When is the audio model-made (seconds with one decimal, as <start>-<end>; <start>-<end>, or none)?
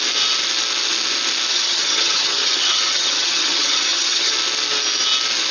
1.5-4.3